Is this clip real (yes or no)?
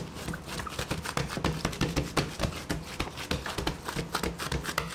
yes